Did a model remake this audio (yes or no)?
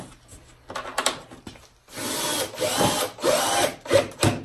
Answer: no